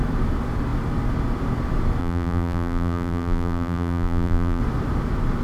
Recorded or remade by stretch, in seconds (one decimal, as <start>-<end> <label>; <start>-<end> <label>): 0.0-2.0 recorded; 2.0-4.6 remade; 4.6-5.4 recorded